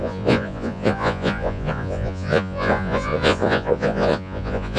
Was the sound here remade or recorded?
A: remade